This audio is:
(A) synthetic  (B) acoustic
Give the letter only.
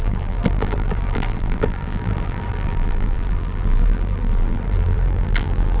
A